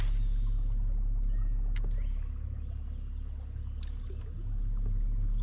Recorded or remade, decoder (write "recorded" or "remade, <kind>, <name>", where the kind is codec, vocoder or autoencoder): recorded